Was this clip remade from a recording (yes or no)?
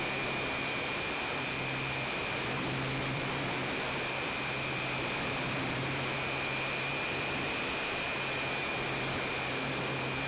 yes